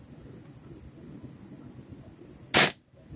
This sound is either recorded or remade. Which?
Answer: recorded